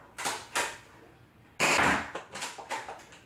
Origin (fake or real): real